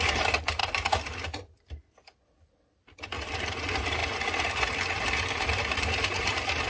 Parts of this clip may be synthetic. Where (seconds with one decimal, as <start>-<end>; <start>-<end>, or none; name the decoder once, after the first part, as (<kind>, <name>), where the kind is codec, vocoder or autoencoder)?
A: 0.0-0.6 (vocoder, BigVGAN v2); 3.3-6.7